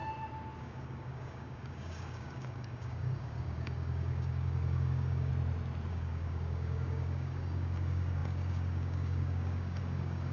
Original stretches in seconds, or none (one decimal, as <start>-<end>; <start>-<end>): 0.0-0.6; 5.3-5.9